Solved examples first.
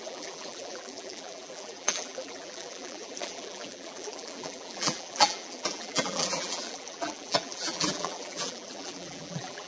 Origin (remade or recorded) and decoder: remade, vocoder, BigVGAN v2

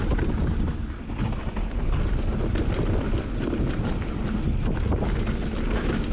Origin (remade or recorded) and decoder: recorded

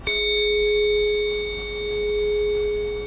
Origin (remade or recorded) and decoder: remade, autoencoder, DAC-VAE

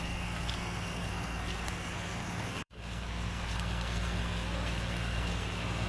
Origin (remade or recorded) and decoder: remade, codec, SNAC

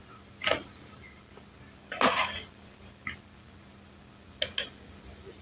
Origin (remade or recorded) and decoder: recorded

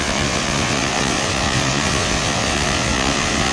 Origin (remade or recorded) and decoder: remade, vocoder, WaveNeXt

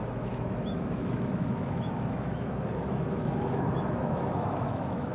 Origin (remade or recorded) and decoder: remade, autoencoder, DAC-VAE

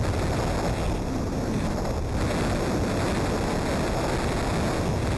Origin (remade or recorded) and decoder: recorded